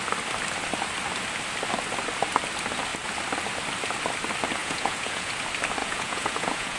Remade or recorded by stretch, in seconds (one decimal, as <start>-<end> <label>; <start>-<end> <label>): 0.0-4.6 recorded; 4.6-5.3 remade; 5.3-5.8 recorded; 5.8-6.8 remade